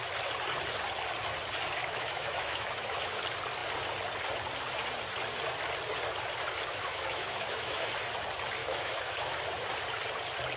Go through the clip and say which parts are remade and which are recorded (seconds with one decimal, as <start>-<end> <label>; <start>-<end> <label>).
0.0-1.8 recorded; 1.8-3.2 remade; 3.2-6.7 recorded; 6.7-7.9 remade; 7.9-8.6 recorded; 8.6-9.4 remade; 9.4-10.6 recorded